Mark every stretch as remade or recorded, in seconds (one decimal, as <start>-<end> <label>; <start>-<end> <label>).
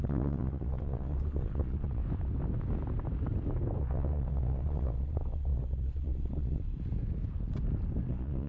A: 0.0-2.0 remade; 2.0-3.8 recorded; 3.8-6.7 remade; 6.7-8.1 recorded; 8.1-8.5 remade